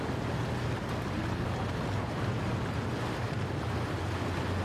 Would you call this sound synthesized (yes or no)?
no